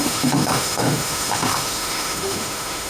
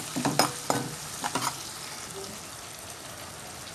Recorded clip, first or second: second